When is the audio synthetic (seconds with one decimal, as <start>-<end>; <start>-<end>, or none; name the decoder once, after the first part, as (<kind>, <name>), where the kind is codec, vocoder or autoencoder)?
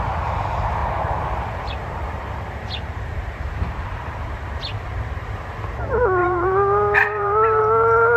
0.8-5.3 (vocoder, BigVGAN v2); 6.2-7.6